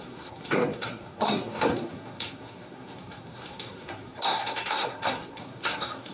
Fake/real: fake